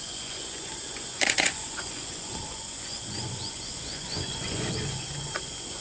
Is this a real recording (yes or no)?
no